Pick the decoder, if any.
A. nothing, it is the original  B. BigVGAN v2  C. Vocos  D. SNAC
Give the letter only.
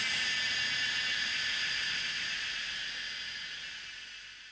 A